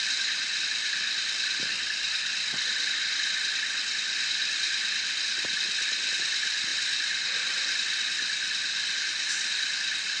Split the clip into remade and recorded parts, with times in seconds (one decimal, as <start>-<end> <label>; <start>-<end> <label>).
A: 0.0-10.2 recorded